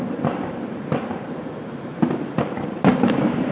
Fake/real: fake